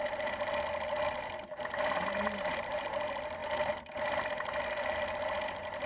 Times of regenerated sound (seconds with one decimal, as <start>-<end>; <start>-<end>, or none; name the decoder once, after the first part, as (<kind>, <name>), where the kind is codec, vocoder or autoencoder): none